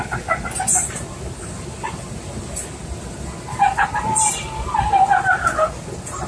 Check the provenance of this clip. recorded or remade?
recorded